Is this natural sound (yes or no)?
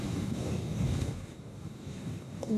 no